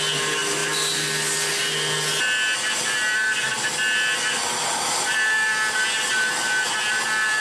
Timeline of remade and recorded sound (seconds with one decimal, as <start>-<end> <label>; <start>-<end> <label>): 0.0-7.4 recorded